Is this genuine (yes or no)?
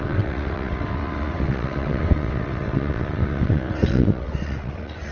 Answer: no